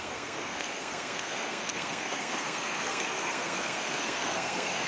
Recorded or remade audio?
remade